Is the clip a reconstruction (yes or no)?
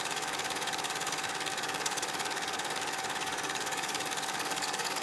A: yes